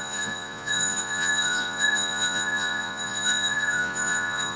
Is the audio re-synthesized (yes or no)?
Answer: yes